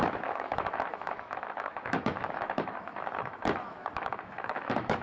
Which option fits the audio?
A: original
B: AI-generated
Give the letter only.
B